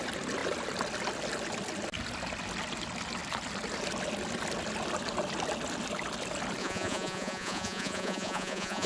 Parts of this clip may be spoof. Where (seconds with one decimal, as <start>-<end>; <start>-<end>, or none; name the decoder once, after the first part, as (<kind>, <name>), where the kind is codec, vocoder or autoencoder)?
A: 6.6-8.9 (vocoder, Vocos)